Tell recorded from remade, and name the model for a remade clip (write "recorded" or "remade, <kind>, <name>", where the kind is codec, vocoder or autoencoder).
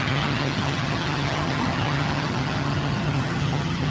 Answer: remade, vocoder, HiFi-GAN